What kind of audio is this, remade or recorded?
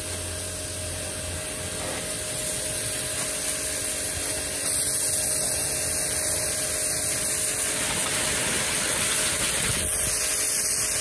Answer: recorded